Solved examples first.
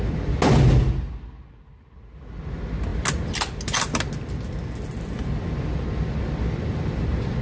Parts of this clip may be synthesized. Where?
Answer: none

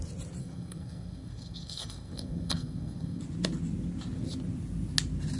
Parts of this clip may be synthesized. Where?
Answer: 0.4-3.2 (codec, SNAC)